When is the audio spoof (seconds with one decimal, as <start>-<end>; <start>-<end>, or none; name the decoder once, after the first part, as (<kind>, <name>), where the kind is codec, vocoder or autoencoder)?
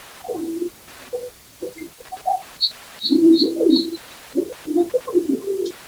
0.7-4.2 (vocoder, BigVGAN v2)